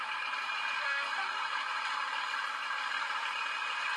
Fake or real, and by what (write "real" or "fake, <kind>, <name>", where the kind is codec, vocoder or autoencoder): real